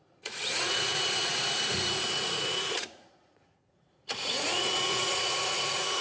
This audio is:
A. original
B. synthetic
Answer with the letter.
B